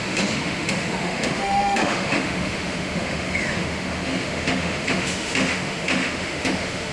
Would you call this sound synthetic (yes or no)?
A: yes